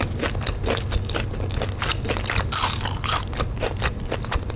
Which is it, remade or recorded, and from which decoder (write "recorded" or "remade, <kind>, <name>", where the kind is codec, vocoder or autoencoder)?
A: recorded